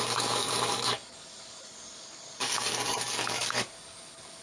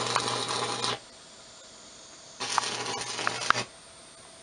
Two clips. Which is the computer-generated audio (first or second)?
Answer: first